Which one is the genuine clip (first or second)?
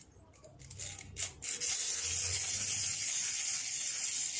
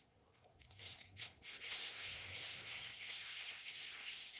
first